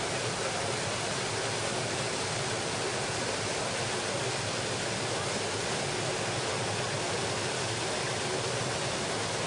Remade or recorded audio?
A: recorded